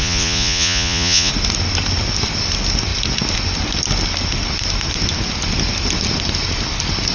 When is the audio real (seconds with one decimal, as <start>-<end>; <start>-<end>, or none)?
1.3-7.1